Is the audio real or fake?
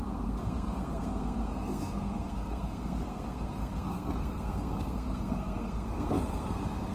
fake